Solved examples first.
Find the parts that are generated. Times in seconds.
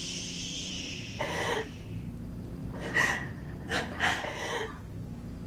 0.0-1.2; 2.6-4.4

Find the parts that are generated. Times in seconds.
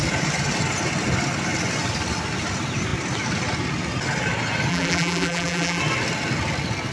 4.7-5.8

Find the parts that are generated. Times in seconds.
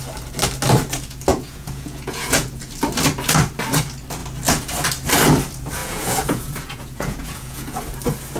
1.3-2.7; 5.8-7.8